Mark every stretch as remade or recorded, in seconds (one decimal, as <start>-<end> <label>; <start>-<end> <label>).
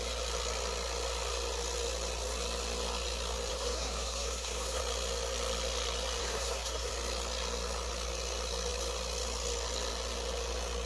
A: 0.0-3.5 recorded; 3.5-4.8 remade; 4.8-6.2 recorded; 6.2-6.9 remade; 6.9-10.9 recorded